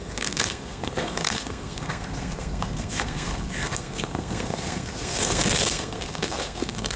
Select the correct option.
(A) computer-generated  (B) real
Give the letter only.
A